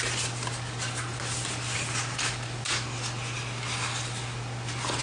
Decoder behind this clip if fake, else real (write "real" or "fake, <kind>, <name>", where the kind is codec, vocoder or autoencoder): real